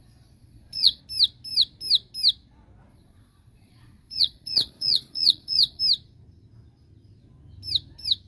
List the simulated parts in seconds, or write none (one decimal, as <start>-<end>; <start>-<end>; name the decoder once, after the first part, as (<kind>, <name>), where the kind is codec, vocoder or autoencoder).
0.0-1.0 (vocoder, Vocos); 2.9-5.8